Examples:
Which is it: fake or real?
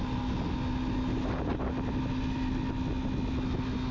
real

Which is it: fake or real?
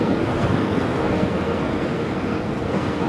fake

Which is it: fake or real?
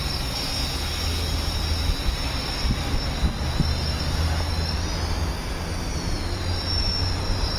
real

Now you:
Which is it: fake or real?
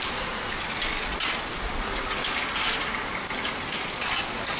real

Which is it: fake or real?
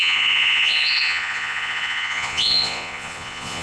fake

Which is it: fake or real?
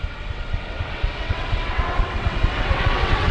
fake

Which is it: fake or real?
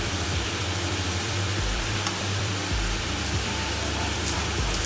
fake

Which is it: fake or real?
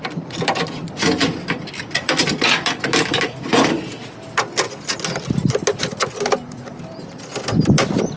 real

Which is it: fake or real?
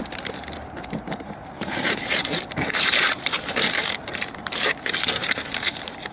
fake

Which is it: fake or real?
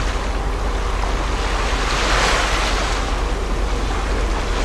real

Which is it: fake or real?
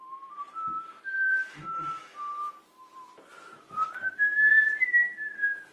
fake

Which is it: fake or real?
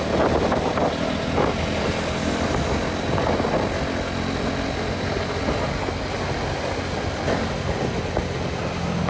real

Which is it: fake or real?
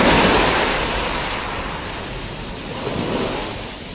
real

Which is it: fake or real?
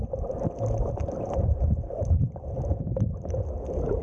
real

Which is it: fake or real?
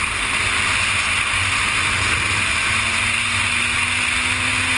real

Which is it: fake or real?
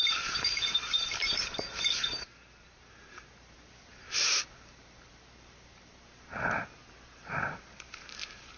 fake